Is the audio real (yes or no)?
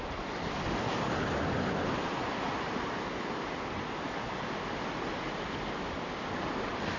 yes